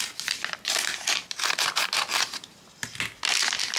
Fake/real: real